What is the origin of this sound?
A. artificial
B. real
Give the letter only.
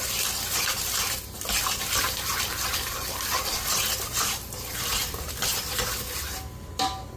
B